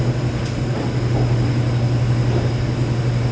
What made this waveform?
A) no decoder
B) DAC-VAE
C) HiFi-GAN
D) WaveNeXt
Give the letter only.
A